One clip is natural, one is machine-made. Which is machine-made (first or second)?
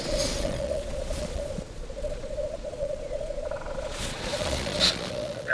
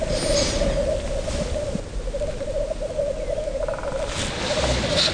first